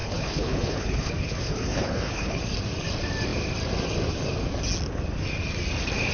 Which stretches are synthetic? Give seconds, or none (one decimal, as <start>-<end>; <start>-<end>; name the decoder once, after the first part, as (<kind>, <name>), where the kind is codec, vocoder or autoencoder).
0.0-2.4 (codec, HILCodec)